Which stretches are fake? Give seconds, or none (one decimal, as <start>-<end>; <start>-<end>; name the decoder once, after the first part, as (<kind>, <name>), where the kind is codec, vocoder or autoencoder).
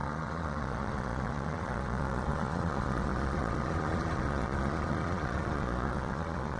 0.0-6.6 (vocoder, Vocos)